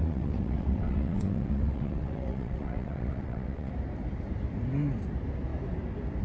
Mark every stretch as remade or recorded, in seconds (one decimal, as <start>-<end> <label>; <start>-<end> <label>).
0.0-3.7 remade; 3.7-6.2 recorded